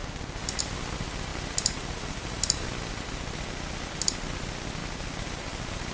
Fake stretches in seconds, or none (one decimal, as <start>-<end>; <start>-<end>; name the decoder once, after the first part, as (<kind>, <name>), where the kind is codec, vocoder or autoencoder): 0.0-0.6 (vocoder, BigVGAN v2); 1.3-2.9